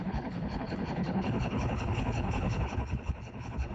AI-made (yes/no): yes